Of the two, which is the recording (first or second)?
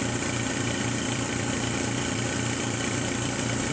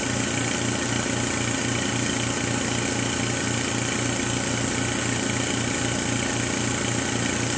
second